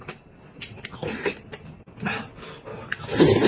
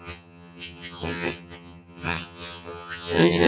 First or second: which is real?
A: first